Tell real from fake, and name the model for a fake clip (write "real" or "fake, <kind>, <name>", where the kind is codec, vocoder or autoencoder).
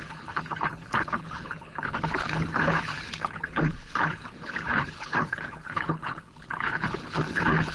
fake, codec, HILCodec